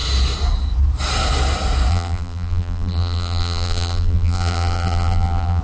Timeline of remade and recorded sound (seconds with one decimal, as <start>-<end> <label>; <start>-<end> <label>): 0.0-1.9 recorded; 1.9-5.6 remade